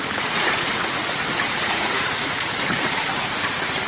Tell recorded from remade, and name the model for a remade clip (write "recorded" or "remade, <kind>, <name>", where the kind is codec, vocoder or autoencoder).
remade, vocoder, Vocos